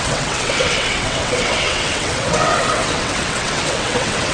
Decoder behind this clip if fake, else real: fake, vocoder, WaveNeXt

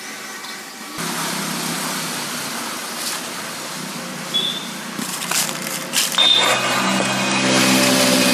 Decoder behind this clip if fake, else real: real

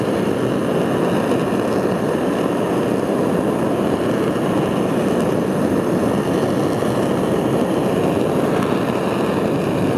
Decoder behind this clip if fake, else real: real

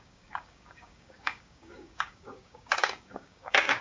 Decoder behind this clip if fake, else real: fake, codec, DAC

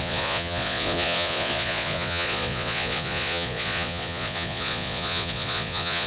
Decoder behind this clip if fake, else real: fake, vocoder, Vocos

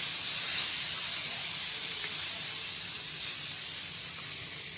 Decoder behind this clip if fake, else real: fake, vocoder, BigVGAN v2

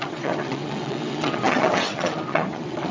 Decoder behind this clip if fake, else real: fake, vocoder, WaveNeXt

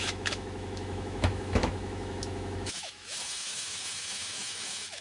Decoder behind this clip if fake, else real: fake, autoencoder, DAC-VAE